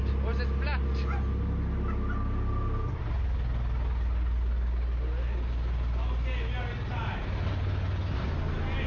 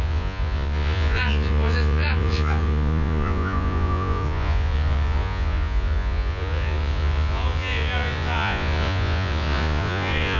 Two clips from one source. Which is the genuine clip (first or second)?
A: first